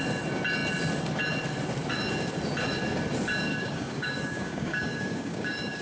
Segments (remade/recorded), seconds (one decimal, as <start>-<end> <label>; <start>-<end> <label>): 0.0-3.5 recorded; 3.5-5.8 remade